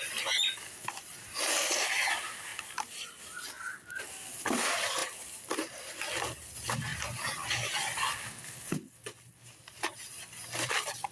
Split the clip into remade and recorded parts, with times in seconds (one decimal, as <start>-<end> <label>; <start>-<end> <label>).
0.0-11.1 recorded